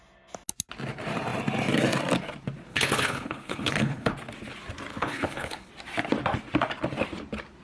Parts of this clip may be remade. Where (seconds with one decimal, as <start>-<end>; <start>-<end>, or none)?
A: 2.7-4.1; 4.9-5.7